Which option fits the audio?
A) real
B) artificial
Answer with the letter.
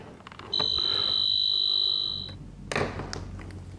A